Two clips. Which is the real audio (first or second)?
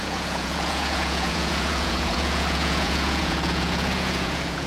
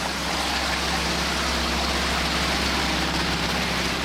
second